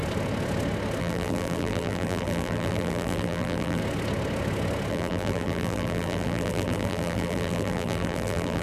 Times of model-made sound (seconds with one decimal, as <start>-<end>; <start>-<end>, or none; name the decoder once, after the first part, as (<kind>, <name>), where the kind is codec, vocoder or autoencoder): 1.0-3.8 (vocoder, BigVGAN v2); 4.9-8.6